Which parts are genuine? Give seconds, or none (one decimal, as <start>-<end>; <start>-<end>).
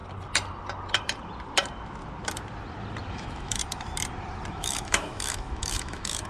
0.0-3.1; 3.6-4.5